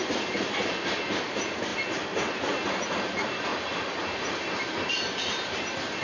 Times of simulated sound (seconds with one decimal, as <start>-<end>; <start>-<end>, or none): 0.0-1.7; 2.6-6.0